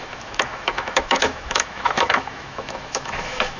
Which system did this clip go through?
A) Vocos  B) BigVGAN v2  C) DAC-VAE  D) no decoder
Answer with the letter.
C